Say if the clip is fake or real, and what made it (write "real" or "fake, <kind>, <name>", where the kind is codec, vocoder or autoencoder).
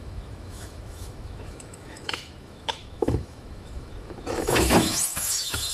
fake, autoencoder, DAC-VAE